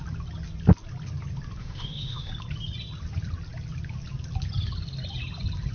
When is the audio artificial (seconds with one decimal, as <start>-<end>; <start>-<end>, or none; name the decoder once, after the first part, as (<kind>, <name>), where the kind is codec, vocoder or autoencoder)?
1.6-2.3 (autoencoder, DAC-VAE)